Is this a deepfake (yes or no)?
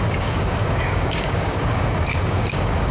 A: yes